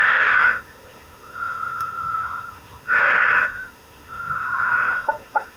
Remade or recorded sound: remade